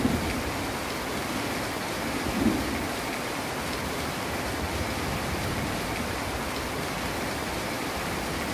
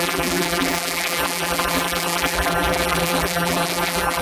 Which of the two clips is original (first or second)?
first